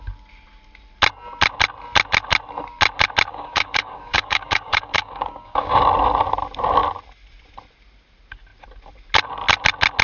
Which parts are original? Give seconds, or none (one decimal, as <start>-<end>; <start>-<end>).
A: 0.0-3.3; 5.8-10.0